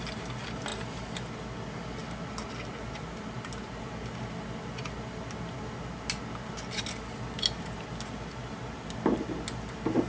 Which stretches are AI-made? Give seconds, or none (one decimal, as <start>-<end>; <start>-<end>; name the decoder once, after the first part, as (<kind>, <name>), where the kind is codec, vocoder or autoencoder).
none